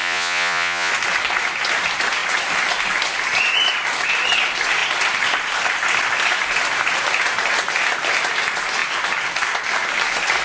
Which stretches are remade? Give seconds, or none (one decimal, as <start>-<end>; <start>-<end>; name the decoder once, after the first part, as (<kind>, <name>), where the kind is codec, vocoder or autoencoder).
0.0-0.9 (vocoder, Vocos)